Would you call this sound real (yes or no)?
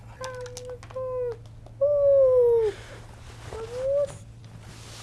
yes